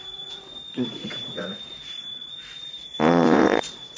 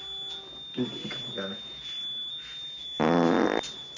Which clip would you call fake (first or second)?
first